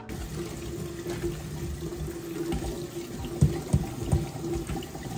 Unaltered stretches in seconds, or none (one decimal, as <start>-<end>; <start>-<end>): 0.0-5.2